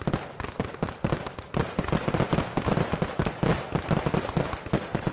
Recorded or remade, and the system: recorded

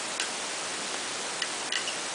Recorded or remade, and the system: recorded